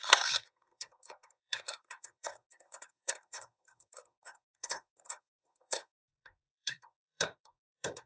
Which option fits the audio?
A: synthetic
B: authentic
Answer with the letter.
A